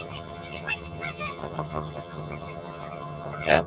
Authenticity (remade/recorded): remade